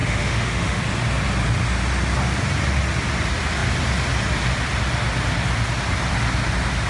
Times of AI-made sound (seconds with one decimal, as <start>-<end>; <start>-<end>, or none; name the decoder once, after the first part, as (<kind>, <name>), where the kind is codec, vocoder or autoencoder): 0.0-0.8 (autoencoder, DAC-VAE)